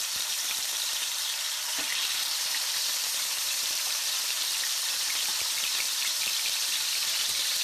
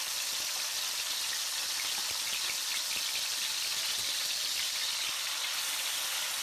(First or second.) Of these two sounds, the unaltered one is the second